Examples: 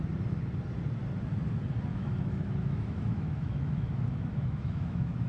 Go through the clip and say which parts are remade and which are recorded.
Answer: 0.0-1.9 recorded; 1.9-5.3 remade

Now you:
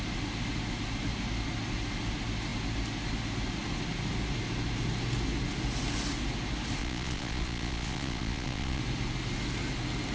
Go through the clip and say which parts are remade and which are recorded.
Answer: 0.0-6.8 recorded; 6.8-8.8 remade; 8.8-10.1 recorded

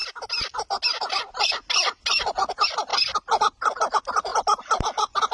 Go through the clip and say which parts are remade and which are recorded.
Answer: 0.0-2.9 recorded; 2.9-3.4 remade; 3.4-4.3 recorded; 4.3-4.8 remade; 4.8-5.3 recorded

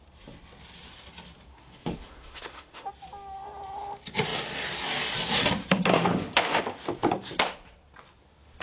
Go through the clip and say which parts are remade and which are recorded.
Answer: 0.0-1.5 recorded; 1.5-2.9 remade; 2.9-5.9 recorded; 5.9-6.6 remade; 6.6-8.6 recorded

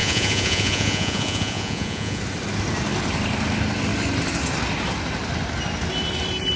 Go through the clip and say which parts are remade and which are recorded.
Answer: 0.0-2.2 remade; 2.2-6.6 recorded

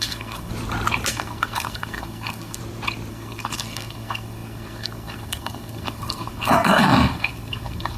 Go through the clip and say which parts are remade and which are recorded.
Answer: 0.0-0.5 remade; 0.5-1.1 recorded; 1.1-2.6 remade; 2.6-3.1 recorded; 3.1-8.0 remade

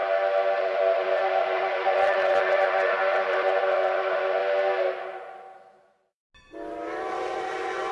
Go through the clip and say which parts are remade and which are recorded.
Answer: 0.0-0.6 recorded; 0.6-4.4 remade; 4.4-7.1 recorded; 7.1-7.9 remade